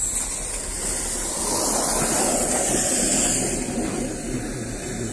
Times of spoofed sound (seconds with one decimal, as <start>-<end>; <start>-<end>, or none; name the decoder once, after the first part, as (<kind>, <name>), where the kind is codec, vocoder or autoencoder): none